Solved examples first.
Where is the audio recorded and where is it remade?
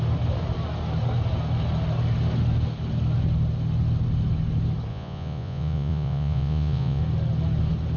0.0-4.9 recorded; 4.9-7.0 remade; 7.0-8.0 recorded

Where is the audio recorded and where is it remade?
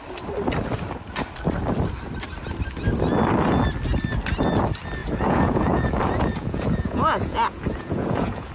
0.0-5.0 recorded; 5.0-8.5 remade